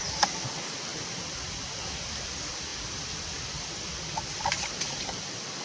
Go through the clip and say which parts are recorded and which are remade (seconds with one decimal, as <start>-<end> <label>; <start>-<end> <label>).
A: 0.0-5.6 recorded